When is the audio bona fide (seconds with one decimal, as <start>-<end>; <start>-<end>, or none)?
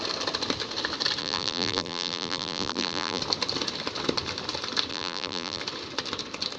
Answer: 0.0-1.2; 3.2-4.9; 5.6-6.6